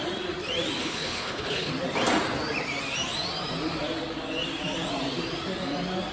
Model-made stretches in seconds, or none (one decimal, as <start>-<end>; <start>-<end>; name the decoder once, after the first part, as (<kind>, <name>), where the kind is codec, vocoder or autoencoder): 0.8-1.7 (codec, HILCodec)